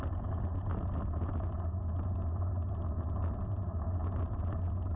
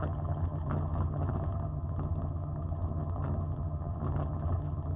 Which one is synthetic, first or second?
second